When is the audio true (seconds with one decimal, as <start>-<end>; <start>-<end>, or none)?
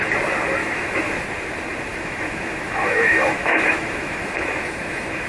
0.0-0.6; 1.1-1.9